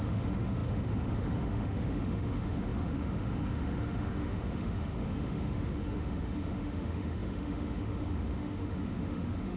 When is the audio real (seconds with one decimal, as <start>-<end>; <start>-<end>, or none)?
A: none